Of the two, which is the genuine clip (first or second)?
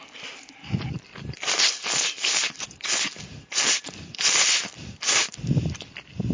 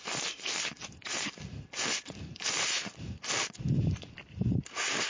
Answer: first